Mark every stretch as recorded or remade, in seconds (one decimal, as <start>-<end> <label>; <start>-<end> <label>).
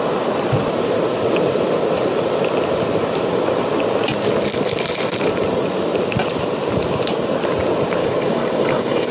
0.0-8.0 recorded; 8.0-9.1 remade